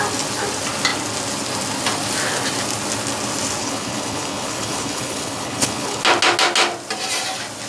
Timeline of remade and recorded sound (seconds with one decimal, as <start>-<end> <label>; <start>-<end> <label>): 0.0-3.6 recorded; 3.6-6.0 remade; 6.0-7.7 recorded